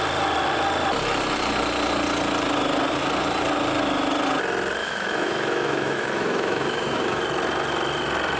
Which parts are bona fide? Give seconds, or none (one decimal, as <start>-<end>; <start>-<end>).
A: 0.0-4.8; 7.2-8.4